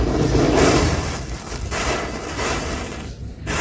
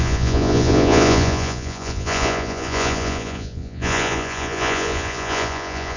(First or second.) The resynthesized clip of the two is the second